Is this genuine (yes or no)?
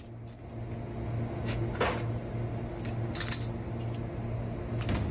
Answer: yes